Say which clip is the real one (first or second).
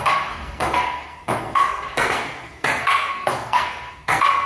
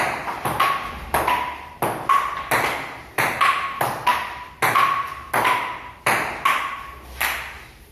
second